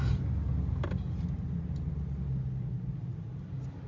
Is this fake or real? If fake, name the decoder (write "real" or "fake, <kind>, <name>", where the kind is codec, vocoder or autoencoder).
real